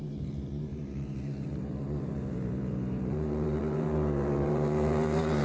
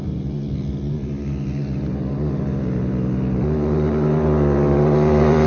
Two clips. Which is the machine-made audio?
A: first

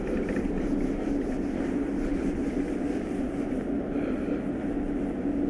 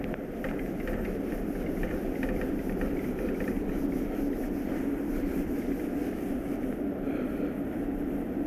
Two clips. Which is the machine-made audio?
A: second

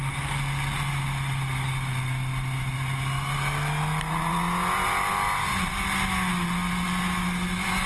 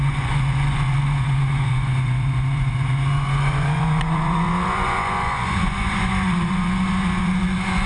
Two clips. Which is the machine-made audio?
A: second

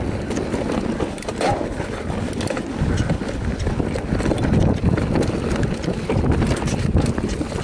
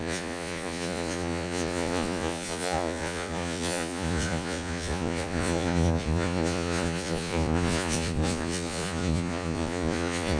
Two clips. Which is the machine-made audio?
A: second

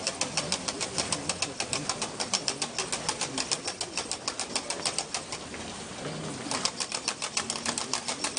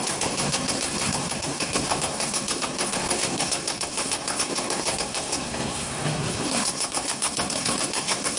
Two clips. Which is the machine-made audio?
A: second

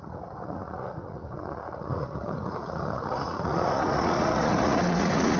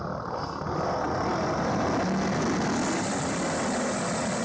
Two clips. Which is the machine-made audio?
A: first